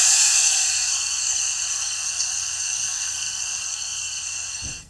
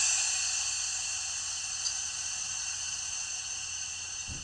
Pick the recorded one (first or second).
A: second